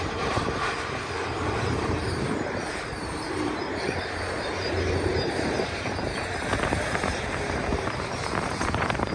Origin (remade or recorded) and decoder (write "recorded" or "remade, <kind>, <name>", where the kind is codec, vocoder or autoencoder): remade, vocoder, BigVGAN v2